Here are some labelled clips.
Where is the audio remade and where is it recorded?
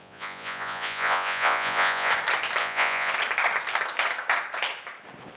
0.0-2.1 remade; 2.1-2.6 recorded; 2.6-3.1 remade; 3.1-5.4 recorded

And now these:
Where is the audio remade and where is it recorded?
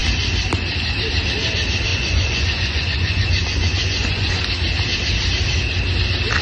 0.0-1.9 recorded; 1.9-4.4 remade; 4.4-6.4 recorded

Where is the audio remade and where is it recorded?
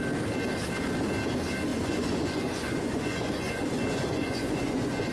0.0-1.7 recorded; 1.7-5.1 remade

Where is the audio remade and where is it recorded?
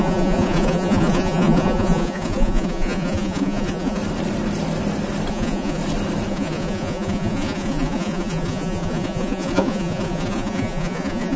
0.0-4.0 remade; 4.0-5.3 recorded; 5.3-5.8 remade; 5.8-6.3 recorded; 6.3-11.4 remade